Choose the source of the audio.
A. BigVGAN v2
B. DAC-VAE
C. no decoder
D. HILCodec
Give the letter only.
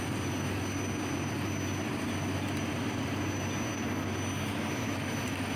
C